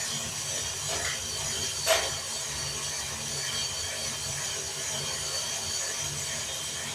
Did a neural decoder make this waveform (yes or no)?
no